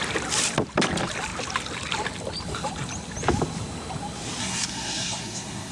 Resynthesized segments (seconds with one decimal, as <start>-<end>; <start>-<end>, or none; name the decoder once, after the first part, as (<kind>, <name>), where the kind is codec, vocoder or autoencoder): 4.4-5.7 (codec, SNAC)